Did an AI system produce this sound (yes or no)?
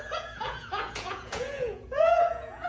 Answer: yes